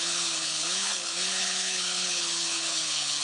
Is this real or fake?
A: fake